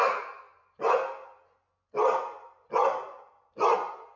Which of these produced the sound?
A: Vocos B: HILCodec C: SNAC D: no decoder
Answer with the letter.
D